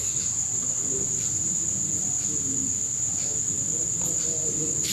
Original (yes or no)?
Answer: yes